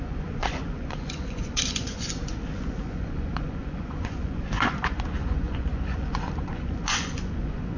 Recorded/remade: remade